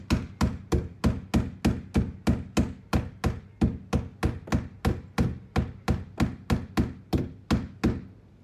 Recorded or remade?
recorded